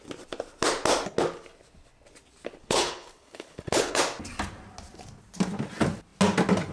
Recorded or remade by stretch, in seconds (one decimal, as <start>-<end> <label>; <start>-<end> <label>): 0.0-2.6 recorded; 2.6-4.0 remade; 4.0-6.7 recorded